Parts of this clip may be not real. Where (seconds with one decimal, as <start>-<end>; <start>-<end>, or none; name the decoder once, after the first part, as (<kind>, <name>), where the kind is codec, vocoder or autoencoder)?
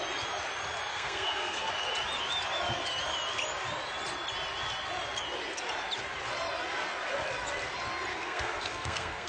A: 0.9-1.7 (codec, SNAC); 8.1-9.3